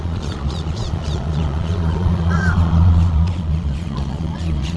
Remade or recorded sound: remade